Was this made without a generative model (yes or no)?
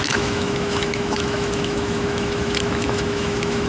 no